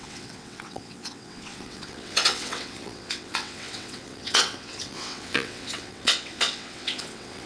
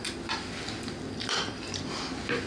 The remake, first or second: first